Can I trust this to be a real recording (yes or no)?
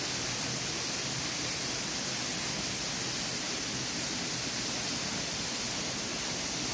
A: yes